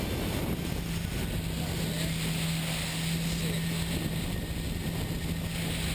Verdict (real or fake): real